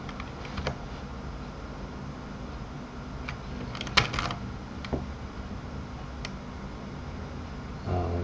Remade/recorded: recorded